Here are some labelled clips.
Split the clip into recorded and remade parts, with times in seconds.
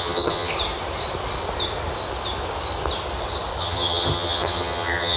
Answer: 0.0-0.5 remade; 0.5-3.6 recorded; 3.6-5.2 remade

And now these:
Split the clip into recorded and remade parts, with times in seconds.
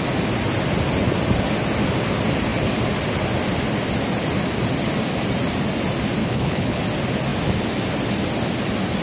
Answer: 0.0-6.2 recorded; 6.2-6.8 remade; 6.8-9.0 recorded